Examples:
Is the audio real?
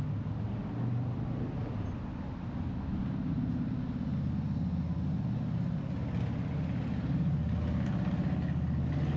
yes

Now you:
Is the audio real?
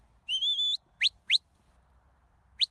yes